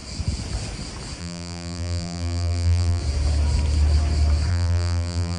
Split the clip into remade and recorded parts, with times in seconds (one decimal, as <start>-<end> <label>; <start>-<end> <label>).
0.0-1.2 recorded; 1.2-3.0 remade; 3.0-4.5 recorded; 4.5-5.4 remade